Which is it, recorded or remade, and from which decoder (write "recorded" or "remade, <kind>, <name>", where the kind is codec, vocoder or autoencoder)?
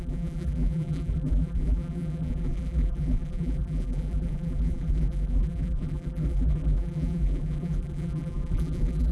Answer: remade, vocoder, BigVGAN v2